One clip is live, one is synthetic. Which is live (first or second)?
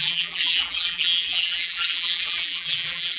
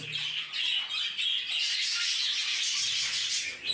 second